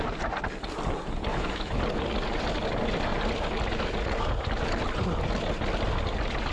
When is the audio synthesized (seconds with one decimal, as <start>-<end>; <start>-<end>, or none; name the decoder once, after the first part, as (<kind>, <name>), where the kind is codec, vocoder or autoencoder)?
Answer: 1.3-1.8 (autoencoder, DAC-VAE)